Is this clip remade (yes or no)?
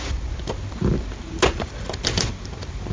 no